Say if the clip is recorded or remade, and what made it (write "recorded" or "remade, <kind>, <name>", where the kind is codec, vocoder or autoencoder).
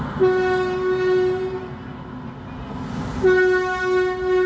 recorded